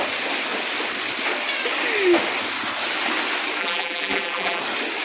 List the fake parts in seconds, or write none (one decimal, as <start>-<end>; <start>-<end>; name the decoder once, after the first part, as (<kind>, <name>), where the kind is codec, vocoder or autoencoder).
3.6-4.6 (vocoder, BigVGAN v2)